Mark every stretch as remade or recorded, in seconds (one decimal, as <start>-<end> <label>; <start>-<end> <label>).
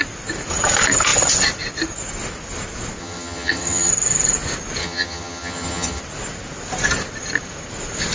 0.0-3.0 recorded; 3.0-3.9 remade; 3.9-4.8 recorded; 4.8-6.0 remade; 6.0-8.1 recorded